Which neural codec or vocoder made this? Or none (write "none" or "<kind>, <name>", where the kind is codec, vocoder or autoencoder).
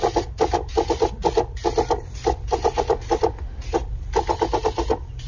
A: none